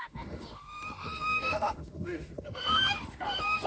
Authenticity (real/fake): fake